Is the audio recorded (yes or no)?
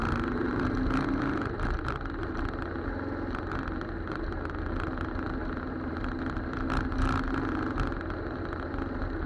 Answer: yes